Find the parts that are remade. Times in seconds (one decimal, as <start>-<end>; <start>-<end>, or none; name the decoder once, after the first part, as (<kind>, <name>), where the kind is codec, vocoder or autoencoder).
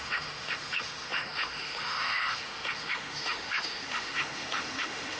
0.0-5.2 (autoencoder, DAC-VAE)